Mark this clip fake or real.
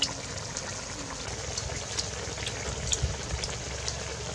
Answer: real